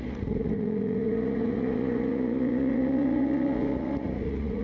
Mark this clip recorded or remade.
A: remade